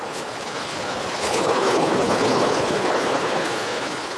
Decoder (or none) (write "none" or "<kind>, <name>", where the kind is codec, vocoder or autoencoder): codec, HILCodec